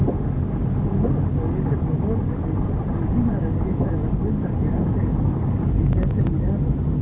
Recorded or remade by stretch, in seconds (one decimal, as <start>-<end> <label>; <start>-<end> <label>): 0.0-2.8 recorded; 2.8-6.3 remade; 6.3-7.0 recorded

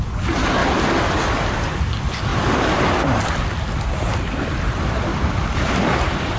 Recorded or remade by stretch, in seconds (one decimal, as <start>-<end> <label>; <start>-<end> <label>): 0.0-5.1 recorded; 5.1-5.7 remade; 5.7-6.4 recorded